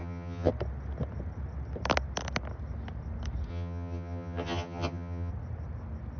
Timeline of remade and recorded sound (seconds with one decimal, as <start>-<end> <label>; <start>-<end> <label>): 0.0-0.5 remade; 0.5-3.5 recorded; 3.5-5.3 remade; 5.3-6.2 recorded